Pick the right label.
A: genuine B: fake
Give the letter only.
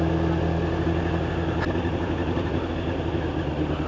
A